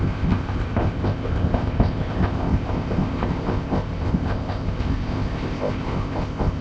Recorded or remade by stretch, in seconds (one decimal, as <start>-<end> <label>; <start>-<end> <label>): 0.0-6.6 remade